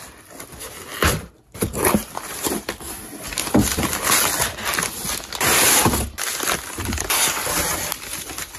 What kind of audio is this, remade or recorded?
recorded